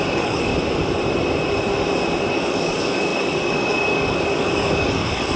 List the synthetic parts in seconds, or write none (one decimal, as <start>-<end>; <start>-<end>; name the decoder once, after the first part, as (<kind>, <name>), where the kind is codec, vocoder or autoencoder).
0.0-0.5 (codec, DAC); 2.2-5.4